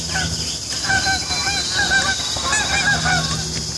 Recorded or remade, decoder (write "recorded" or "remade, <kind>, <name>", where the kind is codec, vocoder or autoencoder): recorded